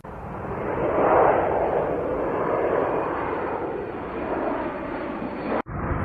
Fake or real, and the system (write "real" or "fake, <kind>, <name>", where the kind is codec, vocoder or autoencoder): fake, vocoder, BigVGAN v2